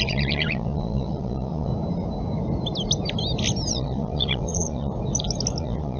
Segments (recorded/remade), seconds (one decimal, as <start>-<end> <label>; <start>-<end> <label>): 0.0-1.7 remade; 1.7-3.7 recorded; 3.7-4.9 remade; 4.9-5.6 recorded; 5.6-6.0 remade